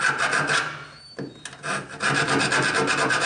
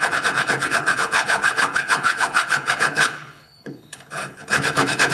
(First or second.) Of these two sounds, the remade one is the second